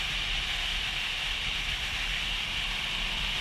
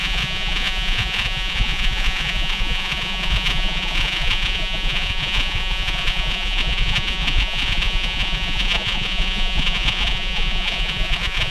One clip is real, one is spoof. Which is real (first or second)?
first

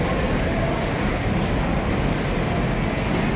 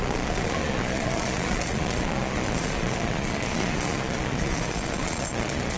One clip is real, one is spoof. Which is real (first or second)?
first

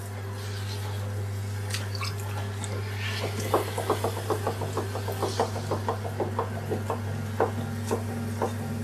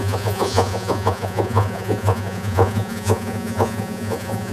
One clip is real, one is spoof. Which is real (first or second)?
first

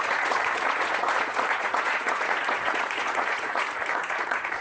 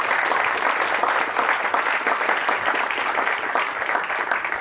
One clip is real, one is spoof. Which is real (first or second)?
second